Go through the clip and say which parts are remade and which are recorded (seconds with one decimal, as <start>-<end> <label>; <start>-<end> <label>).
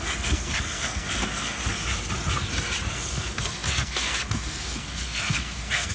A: 0.0-1.8 remade; 1.8-2.9 recorded; 2.9-5.9 remade